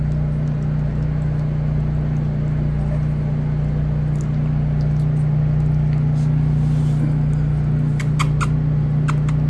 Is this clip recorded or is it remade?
recorded